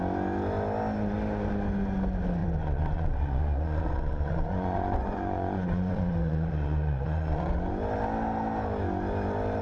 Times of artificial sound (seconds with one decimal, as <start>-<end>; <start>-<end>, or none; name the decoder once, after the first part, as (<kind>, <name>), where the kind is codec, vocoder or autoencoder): 2.4-7.5 (vocoder, Vocos)